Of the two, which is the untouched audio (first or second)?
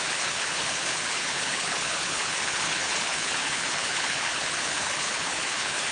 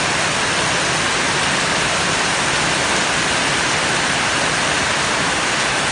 second